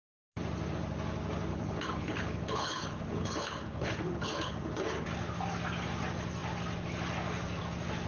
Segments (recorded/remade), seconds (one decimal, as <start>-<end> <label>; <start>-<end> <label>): 0.0-1.5 recorded; 1.5-4.8 remade; 4.8-8.1 recorded